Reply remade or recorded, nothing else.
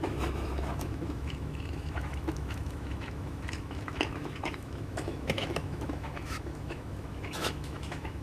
remade